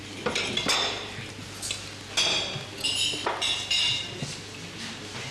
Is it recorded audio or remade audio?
recorded